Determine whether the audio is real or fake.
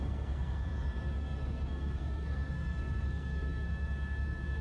fake